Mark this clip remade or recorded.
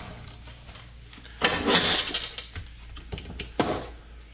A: recorded